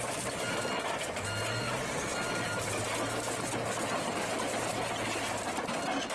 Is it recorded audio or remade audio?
recorded